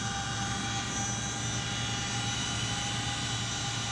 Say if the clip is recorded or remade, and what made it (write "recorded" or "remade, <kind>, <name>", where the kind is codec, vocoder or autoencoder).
recorded